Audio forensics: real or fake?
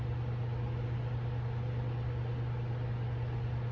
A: real